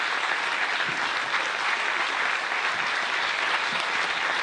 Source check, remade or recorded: recorded